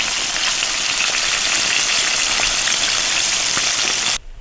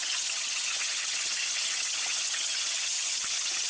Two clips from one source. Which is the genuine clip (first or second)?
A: first